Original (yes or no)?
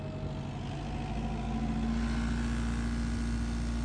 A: yes